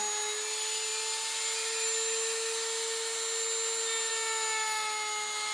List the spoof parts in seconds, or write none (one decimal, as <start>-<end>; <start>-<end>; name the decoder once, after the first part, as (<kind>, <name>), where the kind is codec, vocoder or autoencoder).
none